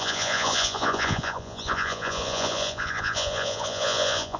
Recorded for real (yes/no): no